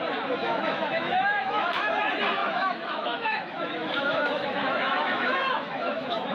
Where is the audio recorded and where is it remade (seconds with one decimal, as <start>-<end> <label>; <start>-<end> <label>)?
0.0-0.4 recorded; 0.4-1.9 remade; 1.9-2.4 recorded; 2.4-6.3 remade